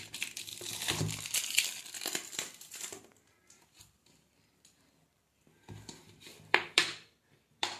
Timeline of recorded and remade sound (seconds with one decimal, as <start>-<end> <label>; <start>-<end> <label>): 0.0-0.5 remade; 0.5-3.6 recorded; 3.6-7.8 remade